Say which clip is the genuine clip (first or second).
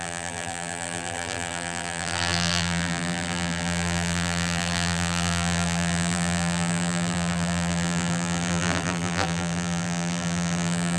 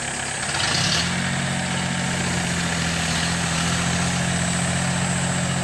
second